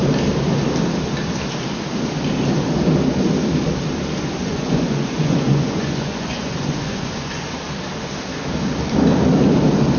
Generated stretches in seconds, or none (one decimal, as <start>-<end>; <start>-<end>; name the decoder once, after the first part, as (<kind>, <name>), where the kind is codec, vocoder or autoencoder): 4.4-7.6 (vocoder, Vocos)